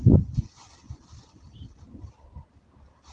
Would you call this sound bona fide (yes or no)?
yes